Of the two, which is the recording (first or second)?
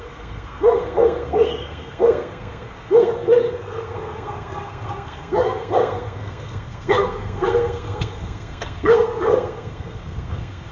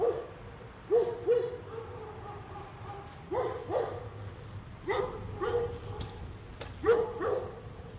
second